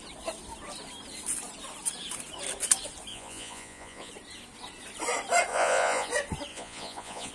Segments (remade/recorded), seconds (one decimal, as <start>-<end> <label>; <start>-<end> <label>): 0.0-3.1 recorded; 3.1-4.1 remade; 4.1-5.5 recorded; 5.5-6.1 remade; 6.1-6.5 recorded; 6.5-7.3 remade